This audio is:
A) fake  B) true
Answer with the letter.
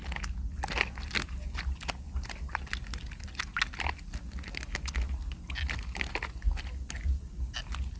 B